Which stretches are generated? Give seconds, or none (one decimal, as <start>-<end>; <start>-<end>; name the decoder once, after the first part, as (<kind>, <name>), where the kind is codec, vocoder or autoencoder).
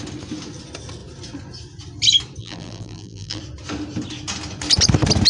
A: 2.4-3.4 (vocoder, BigVGAN v2)